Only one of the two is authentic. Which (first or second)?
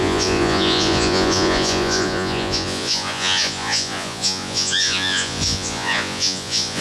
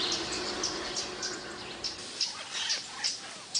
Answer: second